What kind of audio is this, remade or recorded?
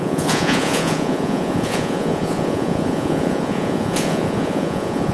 remade